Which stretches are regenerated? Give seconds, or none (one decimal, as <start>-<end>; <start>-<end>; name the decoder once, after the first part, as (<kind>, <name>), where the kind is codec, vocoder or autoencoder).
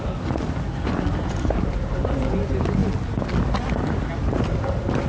none